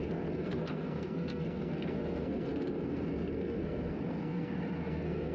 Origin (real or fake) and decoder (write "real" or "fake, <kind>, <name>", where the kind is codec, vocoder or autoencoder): fake, codec, SNAC